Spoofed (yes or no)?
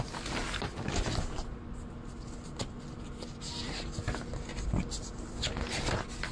no